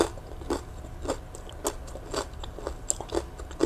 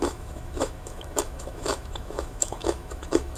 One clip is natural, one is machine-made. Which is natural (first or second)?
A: first